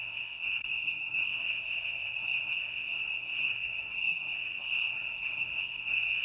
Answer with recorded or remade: remade